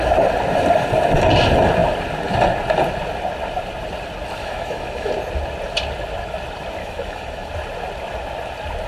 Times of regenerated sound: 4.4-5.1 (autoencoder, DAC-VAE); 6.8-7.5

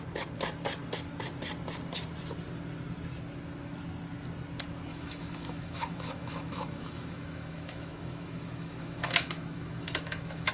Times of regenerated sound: 4.9-10.5 (autoencoder, DAC-VAE)

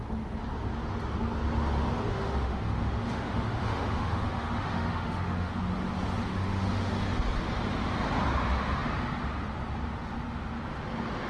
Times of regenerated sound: 2.1-5.5 (autoencoder, DAC-VAE); 6.3-6.9

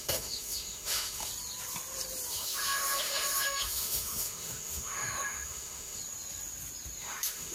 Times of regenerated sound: 0.0-1.3 (autoencoder, DAC-VAE); 2.3-6.0; 7.0-7.5

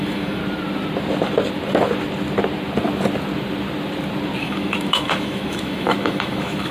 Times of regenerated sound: 0.0-0.4 (autoencoder, DAC-VAE); 4.4-6.7

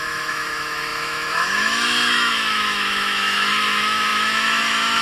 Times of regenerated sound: 0.0-5.0 (autoencoder, DAC-VAE)

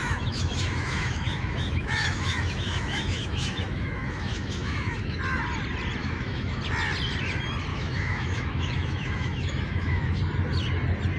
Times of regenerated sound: 0.0-5.2 (autoencoder, DAC-VAE); 6.0-6.6; 7.7-10.2